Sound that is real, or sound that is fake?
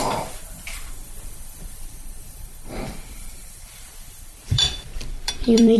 fake